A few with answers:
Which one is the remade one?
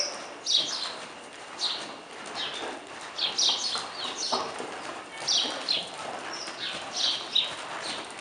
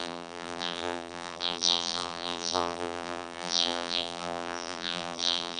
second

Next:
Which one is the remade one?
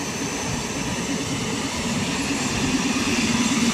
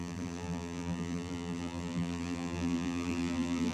second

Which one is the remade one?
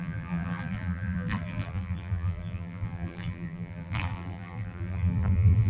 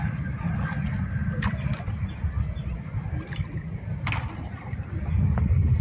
first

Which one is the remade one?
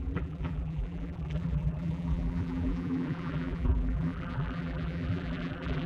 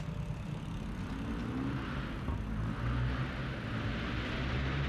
first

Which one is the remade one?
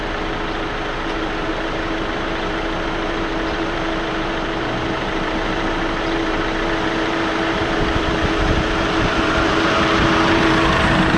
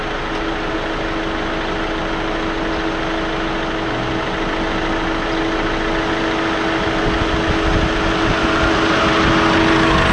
first